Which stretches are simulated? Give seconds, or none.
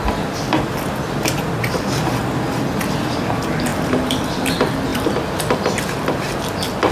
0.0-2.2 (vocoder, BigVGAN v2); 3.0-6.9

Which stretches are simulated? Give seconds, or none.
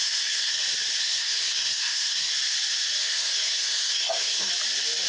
0.0-0.6 (codec, SNAC); 1.0-2.3; 3.0-4.5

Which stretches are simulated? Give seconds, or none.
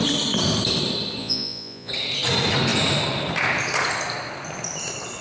1.2-1.9 (vocoder, Vocos)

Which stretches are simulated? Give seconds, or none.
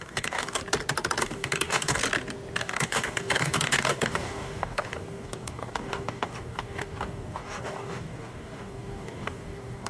0.0-0.6 (codec, DAC); 1.2-2.0; 2.6-9.9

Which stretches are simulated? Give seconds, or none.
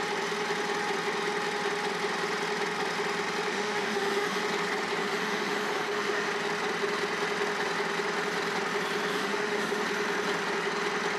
3.5-4.4 (autoencoder, DAC-VAE); 5.0-6.3; 9.1-9.8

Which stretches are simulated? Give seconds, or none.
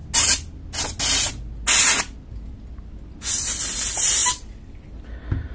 none